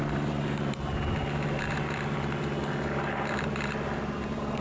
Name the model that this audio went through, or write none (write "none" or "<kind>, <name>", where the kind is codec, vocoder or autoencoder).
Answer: vocoder, BigVGAN v2